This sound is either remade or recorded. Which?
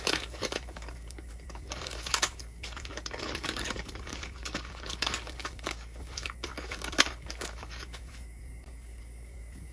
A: remade